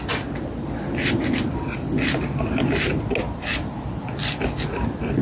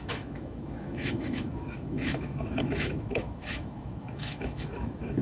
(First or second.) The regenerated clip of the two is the second